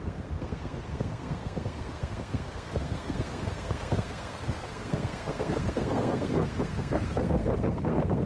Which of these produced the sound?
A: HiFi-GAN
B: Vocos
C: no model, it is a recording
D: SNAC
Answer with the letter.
D